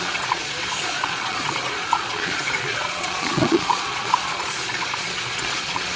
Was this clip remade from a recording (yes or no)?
yes